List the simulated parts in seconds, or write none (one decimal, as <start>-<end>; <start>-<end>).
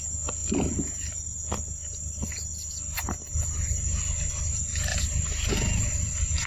4.9-5.5